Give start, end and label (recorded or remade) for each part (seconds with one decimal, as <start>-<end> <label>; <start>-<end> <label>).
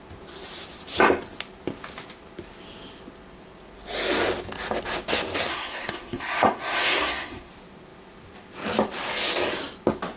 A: 0.0-5.5 recorded; 5.5-7.5 remade; 7.5-10.2 recorded